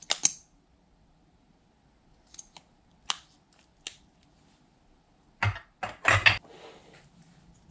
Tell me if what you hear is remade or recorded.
recorded